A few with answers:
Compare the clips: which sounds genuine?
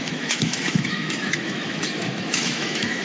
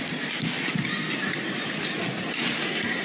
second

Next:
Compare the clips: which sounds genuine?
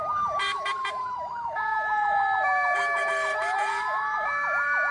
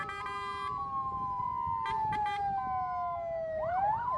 second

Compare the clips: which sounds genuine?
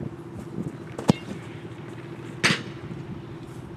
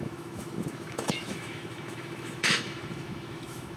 first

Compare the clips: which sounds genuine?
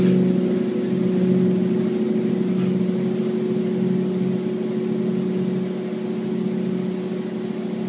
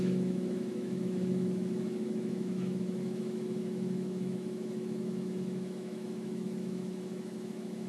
first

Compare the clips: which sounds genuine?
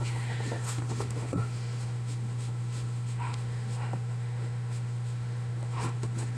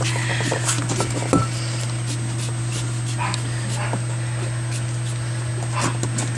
second